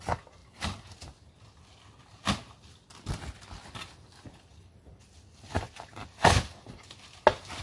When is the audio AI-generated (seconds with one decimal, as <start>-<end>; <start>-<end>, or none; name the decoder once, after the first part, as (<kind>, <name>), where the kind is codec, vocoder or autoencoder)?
0.4-1.3 (vocoder, BigVGAN v2); 4.5-7.0